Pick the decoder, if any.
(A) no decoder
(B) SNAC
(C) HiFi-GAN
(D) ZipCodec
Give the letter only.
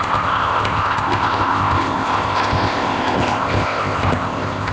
D